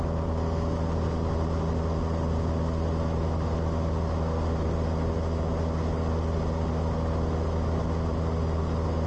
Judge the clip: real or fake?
real